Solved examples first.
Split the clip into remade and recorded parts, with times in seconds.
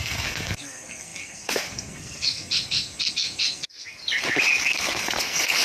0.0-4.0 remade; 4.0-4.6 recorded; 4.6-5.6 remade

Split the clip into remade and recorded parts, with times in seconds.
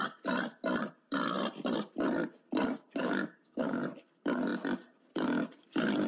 0.0-3.0 recorded; 3.0-3.8 remade; 3.8-6.1 recorded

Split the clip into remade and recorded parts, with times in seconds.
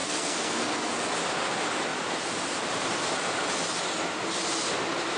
0.0-0.6 remade; 0.6-5.2 recorded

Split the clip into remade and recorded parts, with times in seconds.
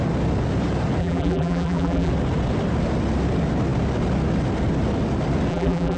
0.0-1.0 recorded; 1.0-2.1 remade; 2.1-5.5 recorded; 5.5-6.0 remade